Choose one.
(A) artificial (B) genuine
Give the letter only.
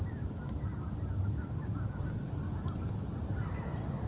B